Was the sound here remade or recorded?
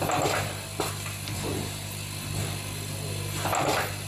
recorded